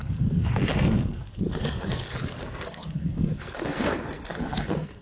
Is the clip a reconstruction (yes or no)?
yes